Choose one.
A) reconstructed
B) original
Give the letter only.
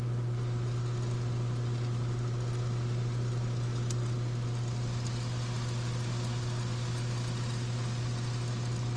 B